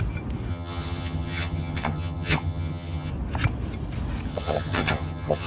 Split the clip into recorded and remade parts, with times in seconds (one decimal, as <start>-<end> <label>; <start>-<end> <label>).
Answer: 0.0-0.5 recorded; 0.5-3.1 remade; 3.1-4.3 recorded; 4.3-5.5 remade